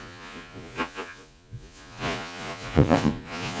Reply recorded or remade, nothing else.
remade